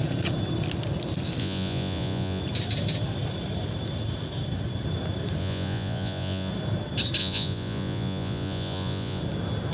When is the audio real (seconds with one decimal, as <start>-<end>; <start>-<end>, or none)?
0.0-1.4; 2.4-5.4; 6.5-7.2; 9.2-9.7